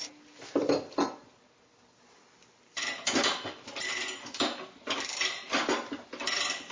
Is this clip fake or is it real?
real